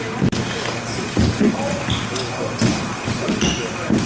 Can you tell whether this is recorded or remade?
recorded